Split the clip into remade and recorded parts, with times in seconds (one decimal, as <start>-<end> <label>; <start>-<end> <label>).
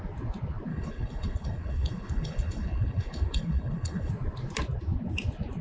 0.0-0.7 recorded; 0.7-4.1 remade; 4.1-5.6 recorded